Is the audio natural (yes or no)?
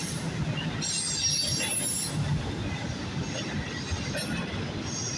yes